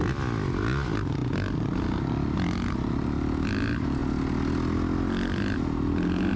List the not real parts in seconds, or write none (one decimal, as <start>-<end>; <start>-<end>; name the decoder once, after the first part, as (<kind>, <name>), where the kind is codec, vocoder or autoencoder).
none

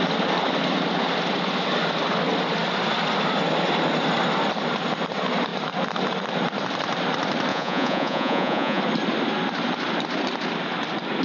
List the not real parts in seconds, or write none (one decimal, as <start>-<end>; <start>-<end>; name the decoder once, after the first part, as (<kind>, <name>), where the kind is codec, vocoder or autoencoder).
7.5-8.8 (vocoder, Vocos)